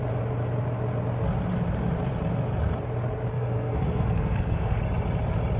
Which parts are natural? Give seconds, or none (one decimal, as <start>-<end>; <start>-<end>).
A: 0.0-3.3; 4.8-5.6